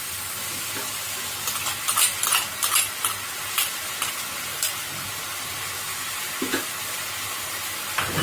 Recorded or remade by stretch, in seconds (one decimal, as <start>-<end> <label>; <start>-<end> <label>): 0.0-5.9 recorded; 5.9-6.8 remade; 6.8-8.2 recorded